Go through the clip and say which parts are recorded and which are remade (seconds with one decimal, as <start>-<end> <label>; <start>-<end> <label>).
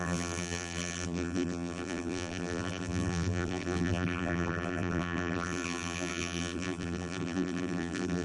0.0-8.2 remade